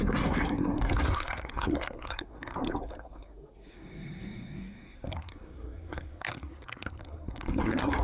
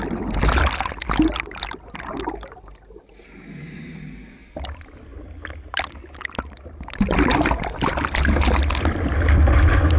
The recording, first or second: second